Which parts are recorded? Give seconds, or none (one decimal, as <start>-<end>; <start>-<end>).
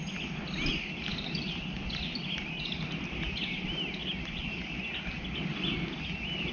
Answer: 0.0-6.5